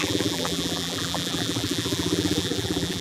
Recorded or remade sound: remade